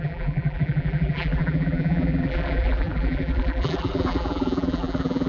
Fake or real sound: fake